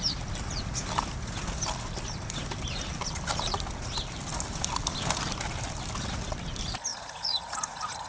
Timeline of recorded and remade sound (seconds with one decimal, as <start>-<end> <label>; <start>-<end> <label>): 0.0-6.9 recorded; 6.9-8.1 remade